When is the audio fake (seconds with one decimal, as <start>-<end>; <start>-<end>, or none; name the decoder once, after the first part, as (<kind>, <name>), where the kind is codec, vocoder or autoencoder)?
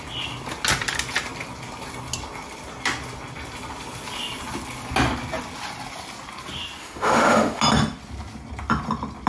6.8-7.6 (autoencoder, DAC-VAE)